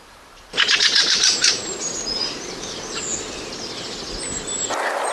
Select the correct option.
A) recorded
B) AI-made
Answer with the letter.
A